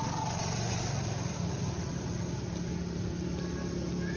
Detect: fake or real real